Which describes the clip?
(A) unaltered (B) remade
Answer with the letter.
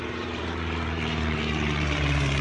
B